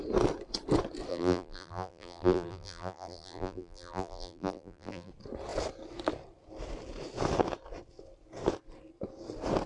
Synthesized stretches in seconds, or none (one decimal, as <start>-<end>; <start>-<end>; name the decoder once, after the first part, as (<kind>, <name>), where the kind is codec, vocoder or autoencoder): 1.1-5.1 (vocoder, BigVGAN v2)